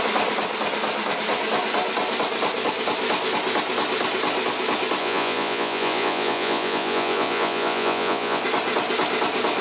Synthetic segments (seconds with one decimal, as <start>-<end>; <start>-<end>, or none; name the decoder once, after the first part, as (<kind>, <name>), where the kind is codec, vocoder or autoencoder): 5.0-8.4 (vocoder, Vocos)